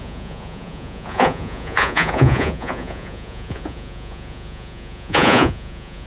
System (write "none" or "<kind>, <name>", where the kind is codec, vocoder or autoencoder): vocoder, Vocos